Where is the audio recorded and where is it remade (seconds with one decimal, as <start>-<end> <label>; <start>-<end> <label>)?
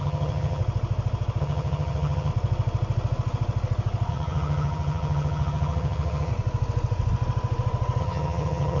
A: 0.0-0.6 remade; 0.6-1.4 recorded; 1.4-2.3 remade; 2.3-4.1 recorded; 4.1-6.3 remade; 6.3-8.0 recorded; 8.0-8.8 remade